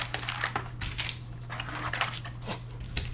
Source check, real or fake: real